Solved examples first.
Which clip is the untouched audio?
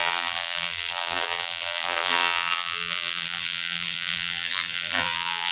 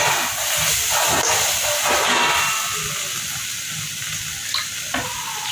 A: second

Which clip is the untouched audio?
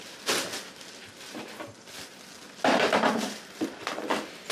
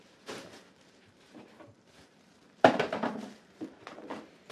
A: first